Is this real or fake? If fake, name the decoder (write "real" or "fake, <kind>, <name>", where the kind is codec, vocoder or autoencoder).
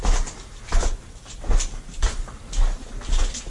real